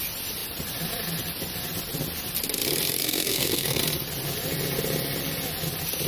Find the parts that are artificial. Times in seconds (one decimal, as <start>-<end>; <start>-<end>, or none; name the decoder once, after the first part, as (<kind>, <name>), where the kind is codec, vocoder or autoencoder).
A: 3.0-3.8 (codec, SNAC)